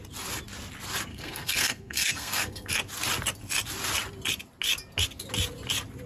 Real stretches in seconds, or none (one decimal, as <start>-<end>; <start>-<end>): 0.0-1.1; 2.7-6.1